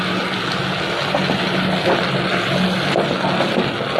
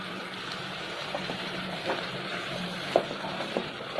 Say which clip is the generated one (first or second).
second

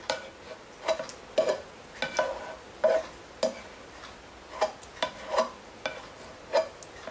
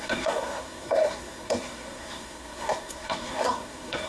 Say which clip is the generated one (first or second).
second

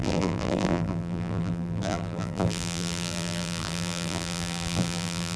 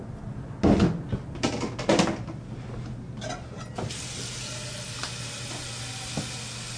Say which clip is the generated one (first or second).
first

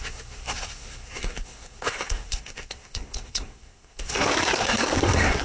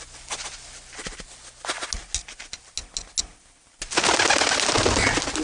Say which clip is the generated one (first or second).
first